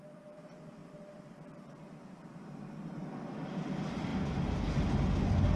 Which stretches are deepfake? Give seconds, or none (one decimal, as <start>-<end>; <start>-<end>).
0.0-4.1